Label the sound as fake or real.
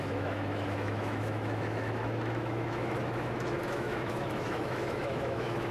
fake